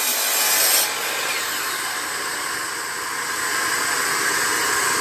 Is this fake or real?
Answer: real